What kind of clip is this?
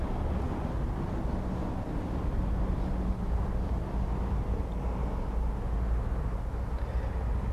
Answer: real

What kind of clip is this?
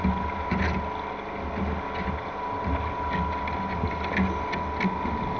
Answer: real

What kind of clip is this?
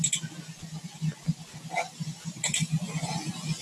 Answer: real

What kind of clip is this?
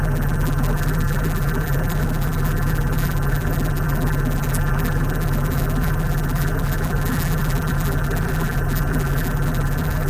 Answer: fake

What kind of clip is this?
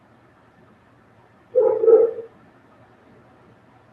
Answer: fake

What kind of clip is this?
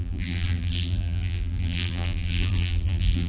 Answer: fake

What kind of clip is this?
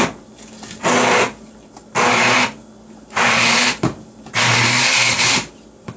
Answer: real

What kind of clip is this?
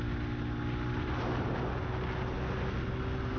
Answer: real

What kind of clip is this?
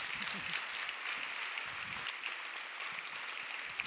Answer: real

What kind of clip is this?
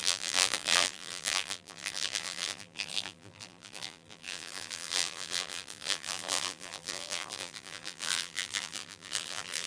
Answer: fake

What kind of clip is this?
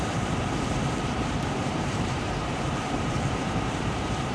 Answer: fake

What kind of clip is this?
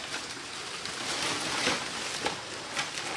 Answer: real